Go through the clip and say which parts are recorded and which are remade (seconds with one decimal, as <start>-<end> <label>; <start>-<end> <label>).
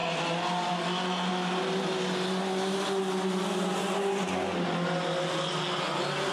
0.0-6.3 recorded